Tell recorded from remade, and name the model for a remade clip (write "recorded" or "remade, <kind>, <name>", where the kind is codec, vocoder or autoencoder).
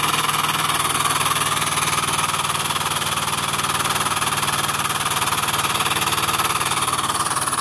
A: recorded